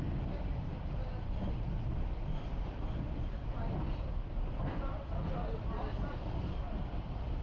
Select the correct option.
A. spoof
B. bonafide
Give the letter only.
B